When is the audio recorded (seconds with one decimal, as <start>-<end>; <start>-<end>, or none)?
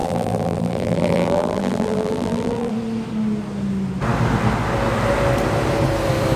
2.7-6.4